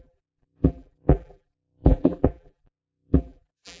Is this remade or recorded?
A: remade